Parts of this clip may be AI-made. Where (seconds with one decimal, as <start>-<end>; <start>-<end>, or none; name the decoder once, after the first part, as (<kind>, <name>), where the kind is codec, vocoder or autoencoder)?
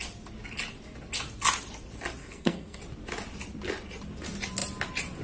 2.2-2.8 (codec, SNAC)